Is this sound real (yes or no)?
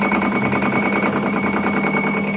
yes